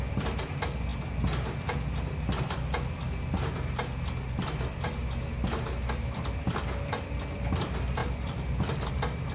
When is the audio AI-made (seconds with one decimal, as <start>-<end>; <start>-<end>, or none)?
0.0-0.9; 5.9-9.3

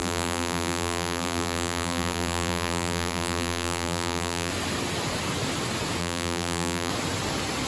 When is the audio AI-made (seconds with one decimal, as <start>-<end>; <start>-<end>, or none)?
0.0-4.5; 6.0-6.9

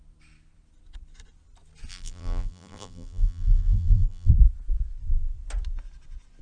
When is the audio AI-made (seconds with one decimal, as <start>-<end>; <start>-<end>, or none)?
1.9-4.3

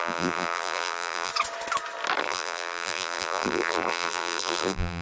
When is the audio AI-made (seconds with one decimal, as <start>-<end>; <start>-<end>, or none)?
0.0-1.3; 2.2-5.0

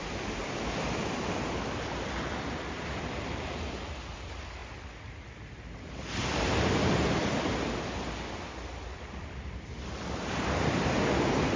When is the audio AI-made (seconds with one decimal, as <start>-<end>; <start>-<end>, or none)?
0.0-4.6; 8.8-11.6